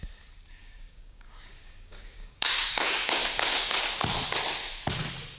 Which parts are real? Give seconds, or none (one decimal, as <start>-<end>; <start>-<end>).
0.0-0.6; 3.8-5.4